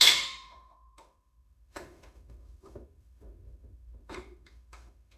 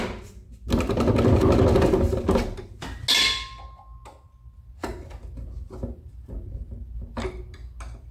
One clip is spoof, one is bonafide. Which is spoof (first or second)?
first